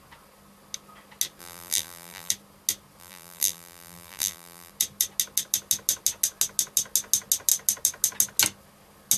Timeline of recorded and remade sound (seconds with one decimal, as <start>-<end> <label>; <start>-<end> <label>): 0.0-1.4 recorded; 1.4-2.3 remade; 2.3-3.0 recorded; 3.0-4.7 remade; 4.7-9.2 recorded